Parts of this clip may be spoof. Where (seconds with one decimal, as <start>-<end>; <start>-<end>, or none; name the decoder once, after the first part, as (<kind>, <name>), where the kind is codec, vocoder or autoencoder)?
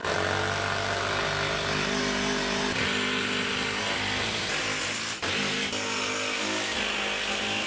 0.0-1.1 (vocoder, BigVGAN v2)